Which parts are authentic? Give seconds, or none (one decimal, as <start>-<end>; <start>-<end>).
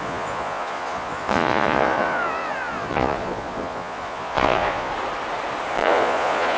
4.9-5.7